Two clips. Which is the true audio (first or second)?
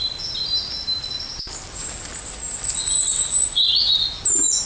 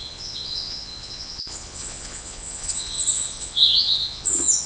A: first